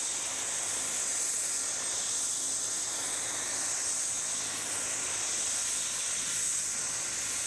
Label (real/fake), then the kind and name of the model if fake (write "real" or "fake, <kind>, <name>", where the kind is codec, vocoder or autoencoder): real